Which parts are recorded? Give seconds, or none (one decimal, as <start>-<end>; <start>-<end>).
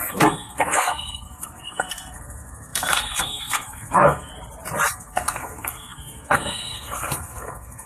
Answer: 4.3-4.9